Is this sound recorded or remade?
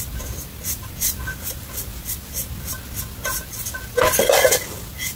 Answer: recorded